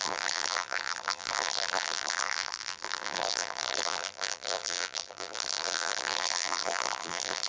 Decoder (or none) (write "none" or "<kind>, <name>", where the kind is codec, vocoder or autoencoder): vocoder, BigVGAN v2